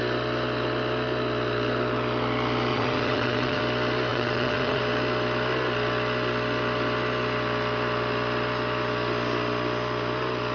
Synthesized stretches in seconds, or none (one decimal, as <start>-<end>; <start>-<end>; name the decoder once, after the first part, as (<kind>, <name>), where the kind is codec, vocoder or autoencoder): 2.7-3.6 (vocoder, WaveNeXt); 4.1-4.8